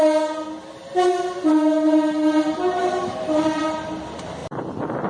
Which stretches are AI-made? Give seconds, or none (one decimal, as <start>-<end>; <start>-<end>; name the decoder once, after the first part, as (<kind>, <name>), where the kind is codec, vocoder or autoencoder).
2.8-3.6 (vocoder, BigVGAN v2); 4.4-5.1